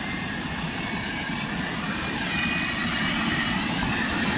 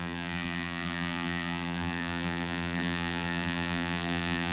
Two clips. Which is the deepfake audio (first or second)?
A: second